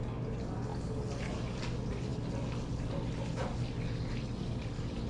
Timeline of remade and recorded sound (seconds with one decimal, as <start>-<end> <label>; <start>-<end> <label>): 0.0-5.1 recorded